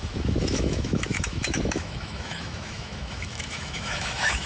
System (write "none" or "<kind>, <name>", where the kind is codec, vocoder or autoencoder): autoencoder, DAC-VAE